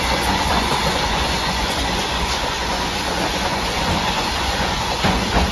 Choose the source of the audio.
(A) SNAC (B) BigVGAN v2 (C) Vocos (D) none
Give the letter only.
C